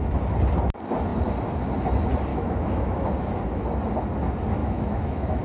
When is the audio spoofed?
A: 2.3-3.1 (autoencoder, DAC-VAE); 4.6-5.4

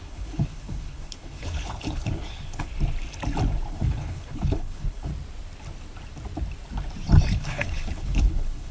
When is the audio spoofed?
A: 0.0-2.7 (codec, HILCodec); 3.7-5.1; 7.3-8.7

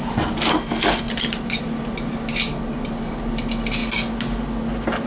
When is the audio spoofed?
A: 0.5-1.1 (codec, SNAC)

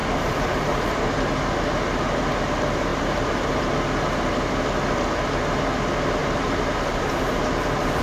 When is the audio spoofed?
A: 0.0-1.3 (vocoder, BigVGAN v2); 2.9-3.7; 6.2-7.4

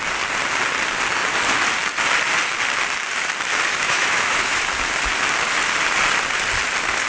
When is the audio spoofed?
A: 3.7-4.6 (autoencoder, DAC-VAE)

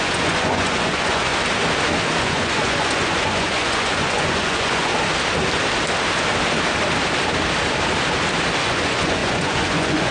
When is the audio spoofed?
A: 0.0-1.3 (vocoder, Vocos); 2.2-4.9; 8.6-10.1

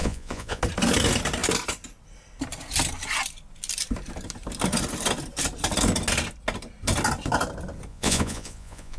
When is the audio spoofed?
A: 0.0-0.6 (vocoder, Vocos); 7.9-9.0

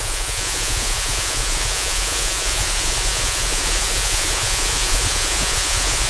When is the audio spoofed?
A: 0.0-6.1 (vocoder, Vocos)